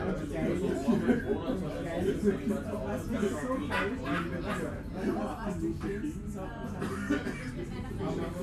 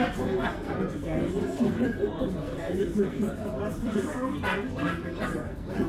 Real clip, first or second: first